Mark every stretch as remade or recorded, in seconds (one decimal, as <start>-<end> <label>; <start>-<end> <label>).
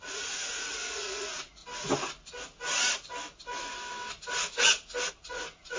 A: 0.0-1.6 remade; 1.6-5.1 recorded; 5.1-5.8 remade